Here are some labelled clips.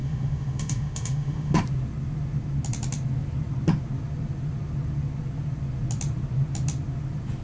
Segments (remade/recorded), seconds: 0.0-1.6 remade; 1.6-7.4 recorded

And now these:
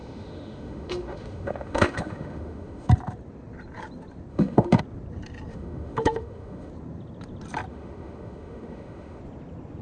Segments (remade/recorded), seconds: 0.0-2.9 remade; 2.9-4.3 recorded; 4.3-4.8 remade; 4.8-5.5 recorded; 5.5-6.7 remade; 6.7-7.7 recorded; 7.7-9.2 remade; 9.2-9.8 recorded

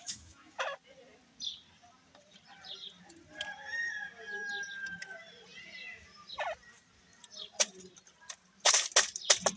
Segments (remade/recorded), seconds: 0.0-0.6 remade; 0.6-9.6 recorded

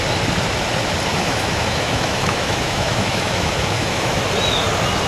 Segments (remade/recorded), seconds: 0.0-1.1 recorded; 1.1-4.2 remade; 4.2-5.1 recorded

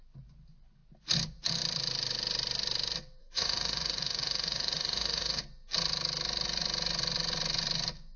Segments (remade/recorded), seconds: 0.0-3.2 recorded; 3.2-5.4 remade; 5.4-8.2 recorded

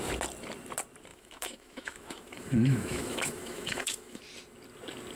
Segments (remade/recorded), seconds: 0.0-1.1 recorded; 1.1-4.2 remade; 4.2-5.2 recorded